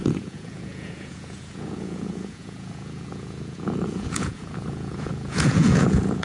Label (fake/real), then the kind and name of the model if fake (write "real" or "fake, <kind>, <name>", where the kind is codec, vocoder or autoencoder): fake, vocoder, Vocos